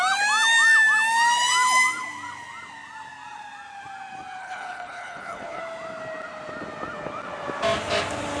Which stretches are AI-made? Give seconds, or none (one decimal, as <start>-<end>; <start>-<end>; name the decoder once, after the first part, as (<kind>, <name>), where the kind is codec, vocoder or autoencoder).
4.4-5.6 (codec, HILCodec)